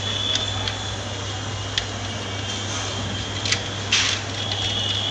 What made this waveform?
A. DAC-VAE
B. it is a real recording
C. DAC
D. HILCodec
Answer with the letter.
B